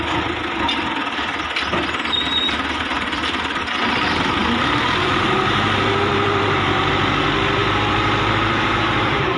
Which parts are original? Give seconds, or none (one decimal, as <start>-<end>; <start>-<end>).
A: 0.0-2.3; 6.9-7.6